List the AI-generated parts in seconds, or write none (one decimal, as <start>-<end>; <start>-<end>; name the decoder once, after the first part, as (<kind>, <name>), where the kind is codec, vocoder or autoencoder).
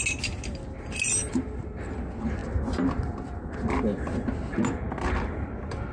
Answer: 1.2-1.8 (vocoder, BigVGAN v2)